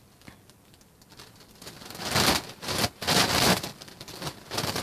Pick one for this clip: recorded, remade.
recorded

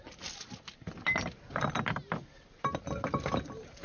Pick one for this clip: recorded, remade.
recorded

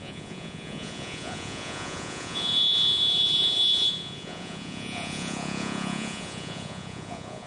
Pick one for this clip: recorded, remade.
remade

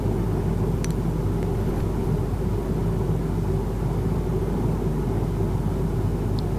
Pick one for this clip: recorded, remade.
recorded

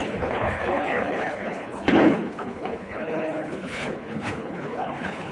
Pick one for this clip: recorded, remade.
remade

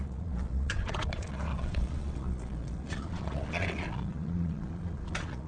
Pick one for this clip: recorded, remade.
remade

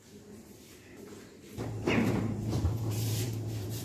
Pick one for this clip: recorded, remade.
remade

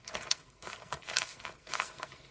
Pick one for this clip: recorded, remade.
remade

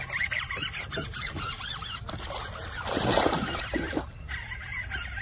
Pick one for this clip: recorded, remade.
recorded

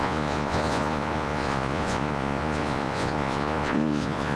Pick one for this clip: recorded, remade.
remade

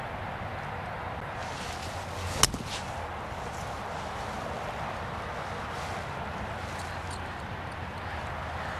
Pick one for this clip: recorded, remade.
recorded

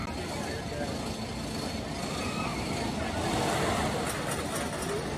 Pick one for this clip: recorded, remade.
recorded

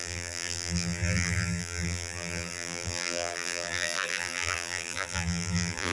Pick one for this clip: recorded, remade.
remade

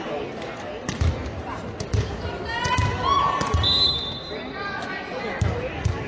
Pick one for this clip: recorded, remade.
recorded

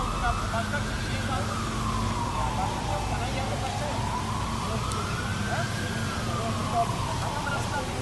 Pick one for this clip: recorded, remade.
recorded